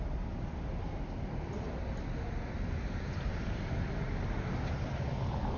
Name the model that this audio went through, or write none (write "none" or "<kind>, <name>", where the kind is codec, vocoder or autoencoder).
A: none